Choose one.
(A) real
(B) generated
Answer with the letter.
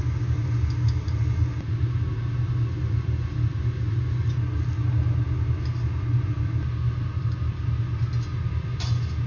A